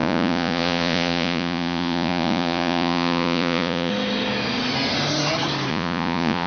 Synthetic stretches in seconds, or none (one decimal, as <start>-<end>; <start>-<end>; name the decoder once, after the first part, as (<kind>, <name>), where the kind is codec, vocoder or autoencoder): 0.0-3.9 (vocoder, Vocos); 5.7-6.5